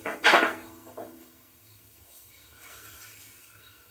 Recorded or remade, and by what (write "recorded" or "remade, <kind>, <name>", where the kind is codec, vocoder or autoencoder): remade, codec, SNAC